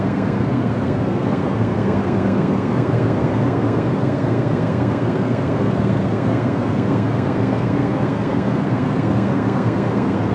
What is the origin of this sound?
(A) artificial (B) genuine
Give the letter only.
A